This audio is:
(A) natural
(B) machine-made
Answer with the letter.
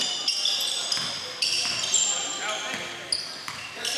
A